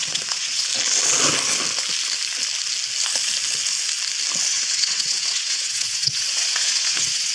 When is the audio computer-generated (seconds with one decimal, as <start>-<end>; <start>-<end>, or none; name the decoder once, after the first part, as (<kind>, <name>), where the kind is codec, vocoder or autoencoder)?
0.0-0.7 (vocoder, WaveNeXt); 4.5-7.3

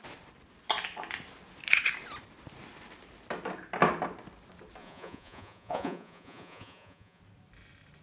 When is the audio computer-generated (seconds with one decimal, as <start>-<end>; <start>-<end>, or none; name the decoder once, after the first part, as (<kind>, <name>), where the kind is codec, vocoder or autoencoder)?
4.8-7.2 (vocoder, Vocos)

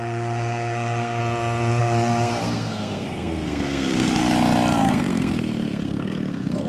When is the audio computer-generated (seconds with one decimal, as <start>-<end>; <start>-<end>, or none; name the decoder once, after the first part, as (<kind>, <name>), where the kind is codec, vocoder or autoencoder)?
0.0-1.2 (codec, SNAC); 1.8-4.2; 4.9-6.7

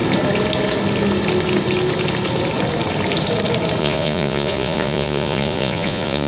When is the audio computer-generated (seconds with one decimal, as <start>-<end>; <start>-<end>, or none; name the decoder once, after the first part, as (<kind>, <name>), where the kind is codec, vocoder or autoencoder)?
3.8-6.3 (vocoder, Vocos)